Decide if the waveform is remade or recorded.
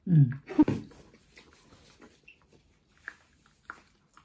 recorded